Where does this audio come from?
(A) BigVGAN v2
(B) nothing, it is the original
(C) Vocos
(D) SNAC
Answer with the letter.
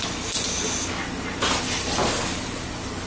B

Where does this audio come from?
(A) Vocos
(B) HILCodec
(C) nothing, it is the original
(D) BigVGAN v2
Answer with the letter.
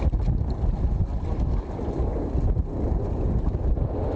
C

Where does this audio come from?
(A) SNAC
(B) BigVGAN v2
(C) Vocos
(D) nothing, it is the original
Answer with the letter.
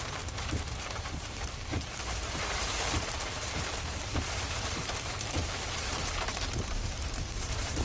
B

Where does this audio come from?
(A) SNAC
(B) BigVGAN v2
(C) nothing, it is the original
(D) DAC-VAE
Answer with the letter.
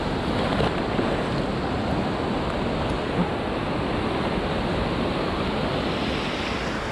C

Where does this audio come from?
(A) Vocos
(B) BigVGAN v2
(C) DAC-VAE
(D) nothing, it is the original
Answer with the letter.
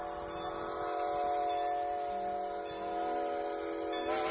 D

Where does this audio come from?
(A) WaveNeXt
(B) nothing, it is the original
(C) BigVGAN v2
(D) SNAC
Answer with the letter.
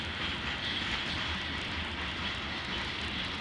B